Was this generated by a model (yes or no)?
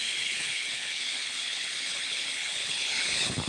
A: yes